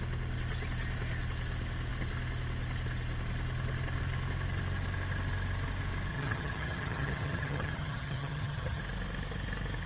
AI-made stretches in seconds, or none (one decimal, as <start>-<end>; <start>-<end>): 6.1-8.8